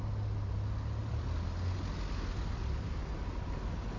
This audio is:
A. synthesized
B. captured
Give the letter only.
B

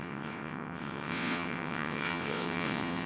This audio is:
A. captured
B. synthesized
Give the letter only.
B